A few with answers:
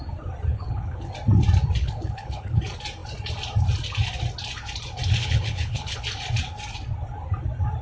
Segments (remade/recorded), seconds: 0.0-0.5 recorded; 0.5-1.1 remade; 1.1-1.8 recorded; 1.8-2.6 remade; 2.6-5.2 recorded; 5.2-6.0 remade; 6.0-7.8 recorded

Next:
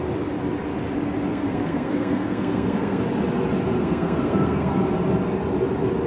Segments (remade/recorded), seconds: 0.0-1.3 recorded; 1.3-3.0 remade; 3.0-3.8 recorded; 3.8-4.7 remade; 4.7-6.1 recorded

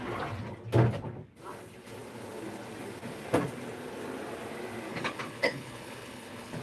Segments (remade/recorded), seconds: 0.0-4.9 recorded; 4.9-6.6 remade

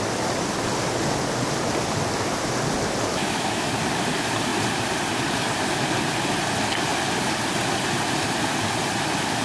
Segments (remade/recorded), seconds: 0.0-3.1 recorded; 3.1-3.7 remade; 3.7-9.4 recorded

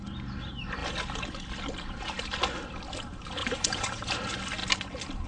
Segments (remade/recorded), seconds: 0.0-3.4 recorded; 3.4-4.1 remade; 4.1-5.3 recorded

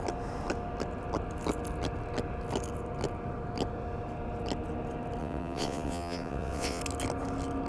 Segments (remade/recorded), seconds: 0.0-5.2 recorded; 5.2-6.8 remade; 6.8-7.7 recorded